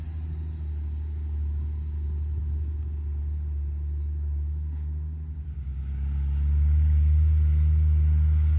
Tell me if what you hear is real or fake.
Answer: real